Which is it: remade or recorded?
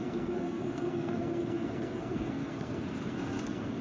remade